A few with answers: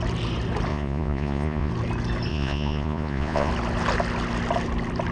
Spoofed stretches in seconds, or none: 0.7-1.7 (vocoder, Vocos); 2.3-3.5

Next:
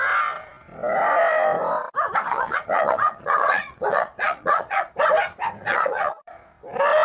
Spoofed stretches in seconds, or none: 2.3-4.9 (vocoder, Vocos); 5.6-6.5

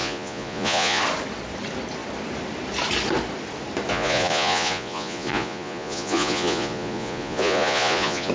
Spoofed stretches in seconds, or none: 0.0-1.0 (vocoder, Vocos); 3.9-8.3

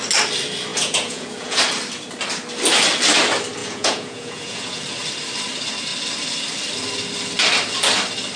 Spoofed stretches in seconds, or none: 0.7-1.6 (vocoder, Vocos); 3.6-4.8

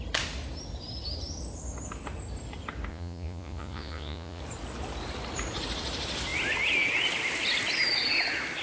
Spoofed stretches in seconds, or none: 2.9-4.4 (vocoder, Vocos)

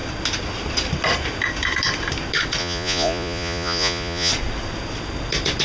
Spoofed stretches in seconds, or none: 2.6-4.3 (vocoder, Vocos)